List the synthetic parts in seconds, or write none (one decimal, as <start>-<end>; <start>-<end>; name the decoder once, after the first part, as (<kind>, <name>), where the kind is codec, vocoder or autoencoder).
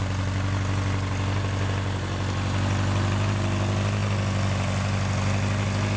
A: none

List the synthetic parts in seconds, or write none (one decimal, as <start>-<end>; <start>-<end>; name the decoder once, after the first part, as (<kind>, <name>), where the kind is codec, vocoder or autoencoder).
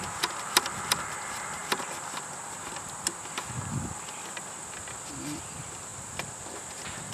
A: none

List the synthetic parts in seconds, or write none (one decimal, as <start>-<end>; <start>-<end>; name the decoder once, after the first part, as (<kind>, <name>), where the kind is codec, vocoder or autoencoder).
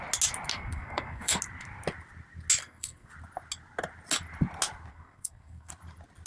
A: 0.5-1.4 (codec, SNAC); 2.6-3.1; 4.9-5.7